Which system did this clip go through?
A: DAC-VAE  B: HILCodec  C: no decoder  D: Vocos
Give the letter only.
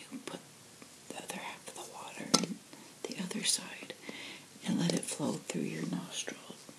C